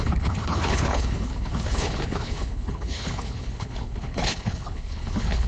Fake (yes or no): yes